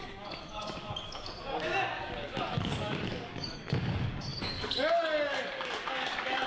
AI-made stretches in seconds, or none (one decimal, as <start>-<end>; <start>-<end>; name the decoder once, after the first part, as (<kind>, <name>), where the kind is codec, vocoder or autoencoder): 0.0-6.5 (codec, DAC)